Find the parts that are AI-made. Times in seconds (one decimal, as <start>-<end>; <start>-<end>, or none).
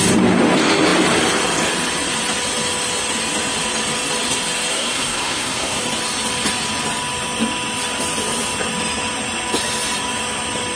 4.7-5.8